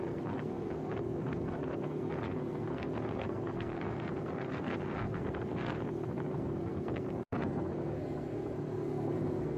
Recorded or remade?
remade